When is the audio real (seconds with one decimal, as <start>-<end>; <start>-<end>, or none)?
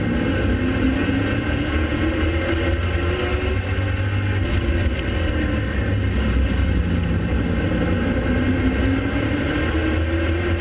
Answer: 0.0-1.0; 2.1-10.6